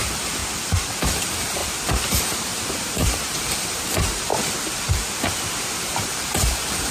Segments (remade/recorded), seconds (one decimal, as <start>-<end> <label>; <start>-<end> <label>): 0.0-0.4 remade; 0.4-1.2 recorded; 1.2-1.6 remade; 1.6-2.2 recorded; 2.2-4.3 remade; 4.3-5.8 recorded; 5.8-6.9 remade